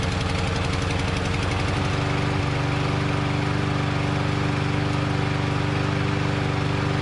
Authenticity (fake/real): real